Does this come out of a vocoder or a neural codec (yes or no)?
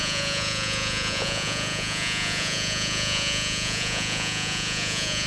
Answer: yes